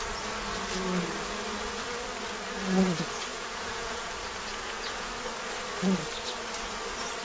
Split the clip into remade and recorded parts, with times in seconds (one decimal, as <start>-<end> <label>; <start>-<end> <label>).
0.0-3.3 recorded; 3.3-4.1 remade; 4.1-4.5 recorded; 4.5-5.1 remade; 5.1-7.2 recorded

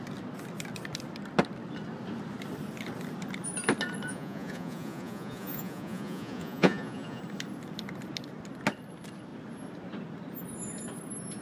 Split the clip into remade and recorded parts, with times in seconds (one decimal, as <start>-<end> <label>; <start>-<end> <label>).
0.0-4.1 recorded; 4.1-7.2 remade; 7.2-11.4 recorded

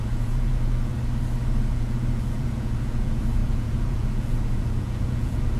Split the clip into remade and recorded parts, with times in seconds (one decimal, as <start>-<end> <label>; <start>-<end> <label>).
0.0-0.9 remade; 0.9-1.7 recorded; 1.7-5.6 remade

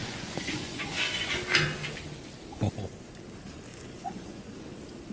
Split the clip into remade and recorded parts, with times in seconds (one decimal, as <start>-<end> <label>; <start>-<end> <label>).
0.0-1.4 remade; 1.4-3.7 recorded; 3.7-4.5 remade; 4.5-5.1 recorded

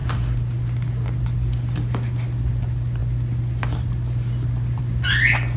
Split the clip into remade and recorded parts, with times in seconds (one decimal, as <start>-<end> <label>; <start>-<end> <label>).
0.0-5.6 recorded

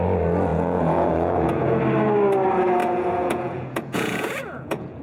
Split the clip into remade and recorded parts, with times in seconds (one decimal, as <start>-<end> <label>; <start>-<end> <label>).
0.0-0.5 recorded; 0.5-1.8 remade; 1.8-2.8 recorded; 2.8-5.0 remade